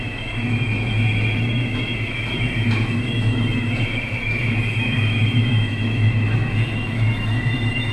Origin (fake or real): fake